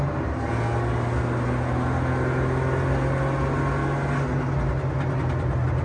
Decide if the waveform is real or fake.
real